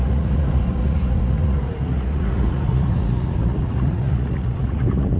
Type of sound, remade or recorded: remade